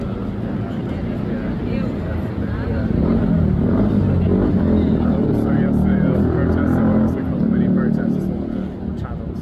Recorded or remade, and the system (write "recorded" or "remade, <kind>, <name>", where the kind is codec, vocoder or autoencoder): recorded